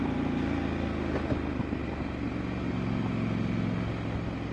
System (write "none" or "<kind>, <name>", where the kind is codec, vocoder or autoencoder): none